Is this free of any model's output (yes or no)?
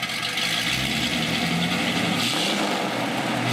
yes